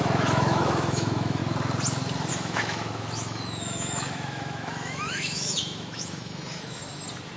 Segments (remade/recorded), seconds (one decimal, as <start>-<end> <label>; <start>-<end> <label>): 0.0-1.4 remade; 1.4-2.3 recorded; 2.3-6.8 remade; 6.8-7.4 recorded